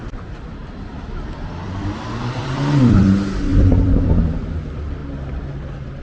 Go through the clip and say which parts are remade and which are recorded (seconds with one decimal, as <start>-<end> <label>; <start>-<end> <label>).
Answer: 0.0-5.0 remade; 5.0-5.5 recorded; 5.5-6.0 remade